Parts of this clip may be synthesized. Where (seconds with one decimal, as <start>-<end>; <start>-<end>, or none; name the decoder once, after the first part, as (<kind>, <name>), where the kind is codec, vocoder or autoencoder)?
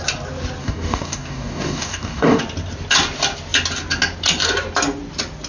0.6-2.4 (codec, DAC)